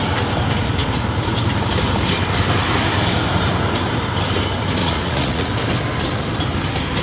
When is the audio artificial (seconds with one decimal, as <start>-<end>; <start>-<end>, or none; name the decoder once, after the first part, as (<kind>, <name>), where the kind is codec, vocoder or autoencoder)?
4.8-5.5 (vocoder, Vocos)